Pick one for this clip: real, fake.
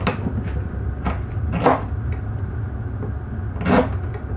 real